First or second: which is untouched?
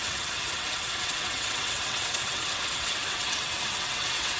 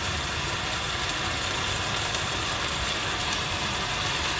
second